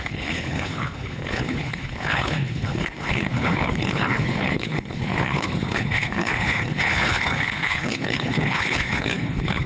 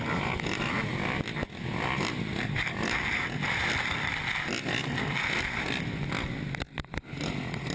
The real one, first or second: second